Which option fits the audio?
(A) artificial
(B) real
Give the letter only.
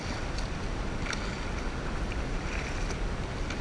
B